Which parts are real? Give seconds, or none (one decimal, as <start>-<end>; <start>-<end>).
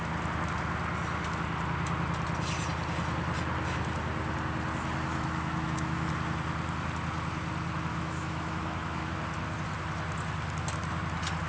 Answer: 0.0-5.1; 6.1-7.9; 9.1-11.5